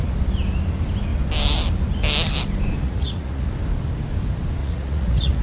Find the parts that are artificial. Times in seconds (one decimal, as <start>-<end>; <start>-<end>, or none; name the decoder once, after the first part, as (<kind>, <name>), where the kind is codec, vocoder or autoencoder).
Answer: 2.8-3.5 (vocoder, Vocos); 4.6-5.4